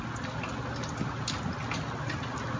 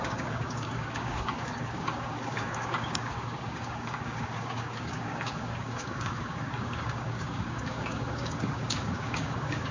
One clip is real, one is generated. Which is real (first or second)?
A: first